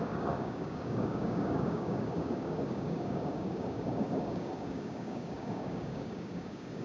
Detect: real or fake fake